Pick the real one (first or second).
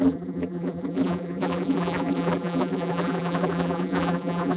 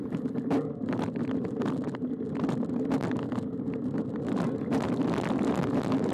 second